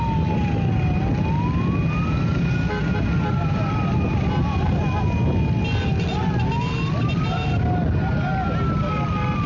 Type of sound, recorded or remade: recorded